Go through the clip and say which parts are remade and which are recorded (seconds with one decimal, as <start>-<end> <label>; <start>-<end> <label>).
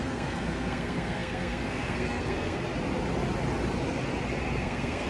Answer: 0.0-2.6 remade; 2.6-4.6 recorded; 4.6-5.1 remade